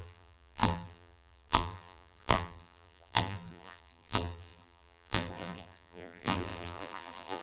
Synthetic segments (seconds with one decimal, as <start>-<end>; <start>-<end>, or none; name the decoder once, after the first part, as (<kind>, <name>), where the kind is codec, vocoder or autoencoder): 0.0-7.4 (vocoder, BigVGAN v2)